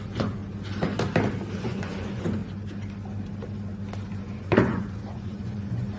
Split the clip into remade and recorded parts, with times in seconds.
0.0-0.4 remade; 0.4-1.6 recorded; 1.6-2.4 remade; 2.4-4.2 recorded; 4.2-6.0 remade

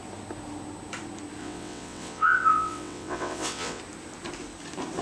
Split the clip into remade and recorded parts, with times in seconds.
0.0-1.4 recorded; 1.4-3.8 remade; 3.8-5.0 recorded

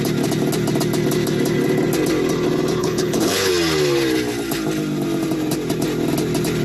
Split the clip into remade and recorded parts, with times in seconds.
0.0-2.8 recorded; 2.8-3.5 remade; 3.5-6.6 recorded

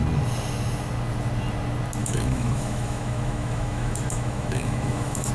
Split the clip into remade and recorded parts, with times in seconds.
0.0-2.0 recorded; 2.0-5.3 remade

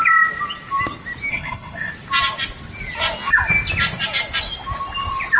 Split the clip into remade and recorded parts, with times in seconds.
0.0-1.3 recorded; 1.3-1.9 remade; 1.9-5.4 recorded